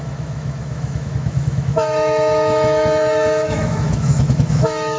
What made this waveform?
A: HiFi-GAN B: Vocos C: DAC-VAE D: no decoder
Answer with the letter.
C